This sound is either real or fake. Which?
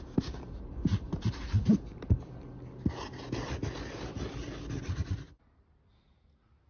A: real